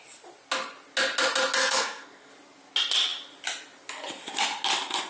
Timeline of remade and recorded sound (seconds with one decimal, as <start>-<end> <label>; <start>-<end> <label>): 0.0-1.6 recorded; 1.6-2.3 remade; 2.3-5.1 recorded

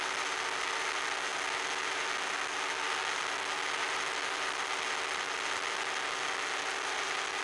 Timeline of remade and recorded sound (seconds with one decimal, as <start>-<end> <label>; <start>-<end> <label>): 0.0-7.4 recorded

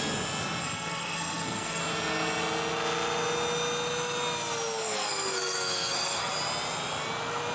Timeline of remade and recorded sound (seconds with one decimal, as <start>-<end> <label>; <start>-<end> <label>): 0.0-0.6 recorded; 0.6-1.8 remade; 1.8-4.8 recorded; 4.8-6.3 remade; 6.3-7.5 recorded

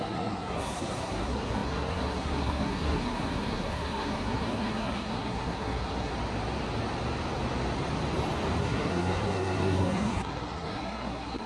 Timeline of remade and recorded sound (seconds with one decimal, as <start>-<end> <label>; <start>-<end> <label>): 0.0-6.1 remade; 6.1-8.6 recorded; 8.6-11.5 remade

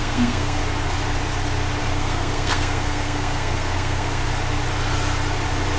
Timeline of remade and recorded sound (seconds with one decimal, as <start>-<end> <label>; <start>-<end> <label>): 0.0-0.6 remade; 0.6-1.8 recorded; 1.8-4.2 remade; 4.2-5.8 recorded